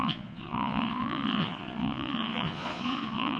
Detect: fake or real fake